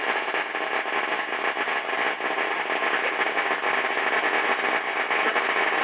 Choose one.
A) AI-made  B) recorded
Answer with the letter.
B